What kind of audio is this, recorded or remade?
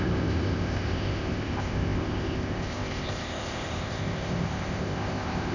remade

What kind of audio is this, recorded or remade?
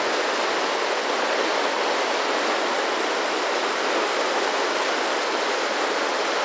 recorded